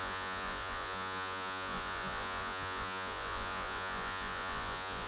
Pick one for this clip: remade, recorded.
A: remade